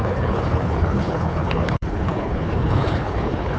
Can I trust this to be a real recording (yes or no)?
no